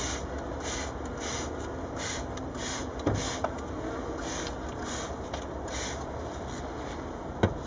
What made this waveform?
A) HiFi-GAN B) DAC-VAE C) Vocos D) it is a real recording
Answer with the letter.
D